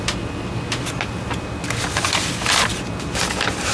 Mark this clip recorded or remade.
recorded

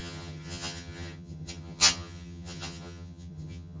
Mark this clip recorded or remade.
remade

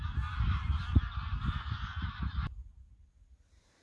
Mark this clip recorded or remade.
recorded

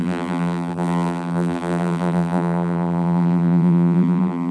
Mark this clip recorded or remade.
remade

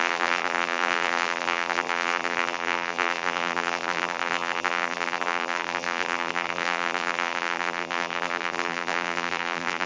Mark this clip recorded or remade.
remade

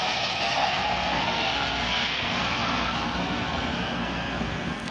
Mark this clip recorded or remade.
remade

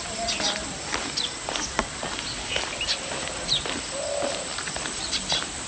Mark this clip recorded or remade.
recorded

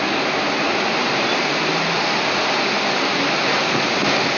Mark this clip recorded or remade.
recorded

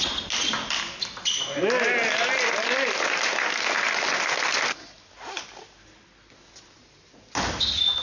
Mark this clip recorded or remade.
recorded